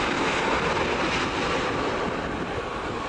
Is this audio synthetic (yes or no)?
no